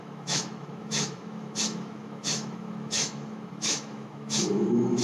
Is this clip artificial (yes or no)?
yes